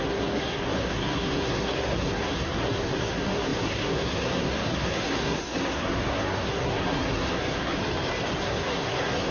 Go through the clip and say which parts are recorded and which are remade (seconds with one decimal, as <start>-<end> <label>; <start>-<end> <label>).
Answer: 0.0-7.8 remade; 7.8-8.4 recorded; 8.4-9.3 remade

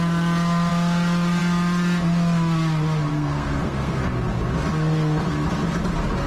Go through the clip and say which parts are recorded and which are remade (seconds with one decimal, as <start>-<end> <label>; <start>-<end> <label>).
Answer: 0.0-3.1 recorded; 3.1-4.0 remade; 4.0-6.3 recorded

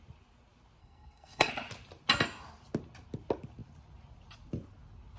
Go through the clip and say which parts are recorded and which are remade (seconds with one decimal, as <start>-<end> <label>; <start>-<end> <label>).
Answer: 0.0-0.8 recorded; 0.8-1.5 remade; 1.5-5.2 recorded